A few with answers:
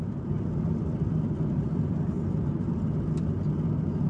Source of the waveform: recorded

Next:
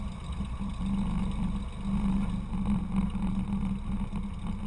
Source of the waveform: recorded